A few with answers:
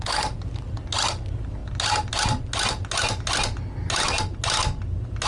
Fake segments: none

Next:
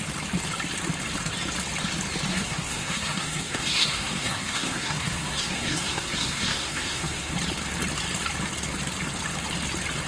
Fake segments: 2.3-7.3 (codec, SNAC)

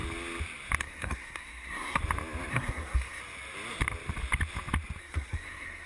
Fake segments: 0.8-2.0 (codec, SNAC); 2.5-3.2; 5.0-5.9

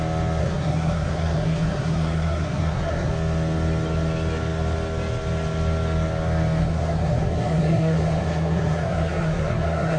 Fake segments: 0.4-3.1 (codec, SNAC); 6.6-10.0

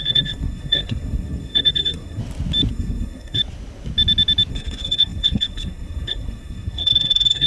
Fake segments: 0.0-2.2 (codec, SNAC); 2.7-3.4; 4.5-7.5

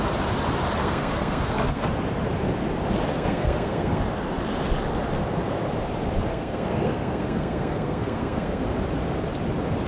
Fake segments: 0.8-1.9 (codec, SNAC); 3.1-4.0; 6.3-8.6

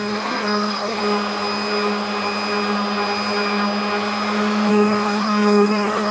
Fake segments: 0.0-1.0 (codec, SNAC); 4.7-6.1